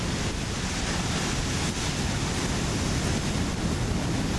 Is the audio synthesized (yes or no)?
no